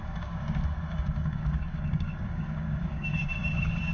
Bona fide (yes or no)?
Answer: no